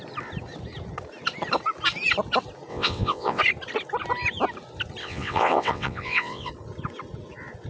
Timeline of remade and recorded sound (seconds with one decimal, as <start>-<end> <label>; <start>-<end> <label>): 0.0-2.7 recorded; 2.7-3.4 remade; 3.4-5.0 recorded; 5.0-6.5 remade; 6.5-7.7 recorded